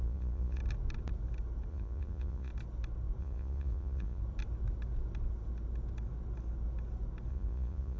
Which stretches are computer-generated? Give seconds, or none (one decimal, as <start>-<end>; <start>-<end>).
0.0-0.6; 1.7-2.5; 3.2-4.2; 7.3-8.0

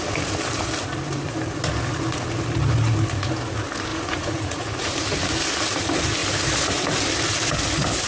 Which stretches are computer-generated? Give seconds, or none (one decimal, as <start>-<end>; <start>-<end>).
3.9-5.0

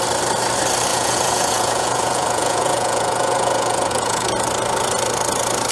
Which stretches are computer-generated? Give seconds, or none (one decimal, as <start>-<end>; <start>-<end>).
0.9-4.3

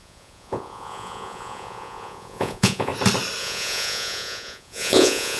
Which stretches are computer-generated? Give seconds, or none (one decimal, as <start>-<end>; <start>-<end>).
0.0-2.9; 3.4-5.4